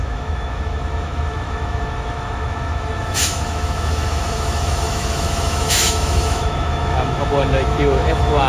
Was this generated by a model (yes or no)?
yes